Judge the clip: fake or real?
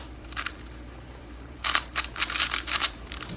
fake